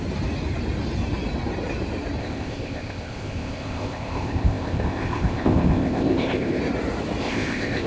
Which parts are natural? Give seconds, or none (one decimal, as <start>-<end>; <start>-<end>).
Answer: 0.0-2.2; 6.6-7.2